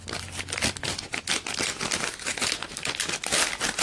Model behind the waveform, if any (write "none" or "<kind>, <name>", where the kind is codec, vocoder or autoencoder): none